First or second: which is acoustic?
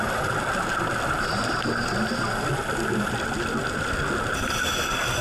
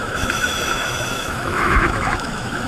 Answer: first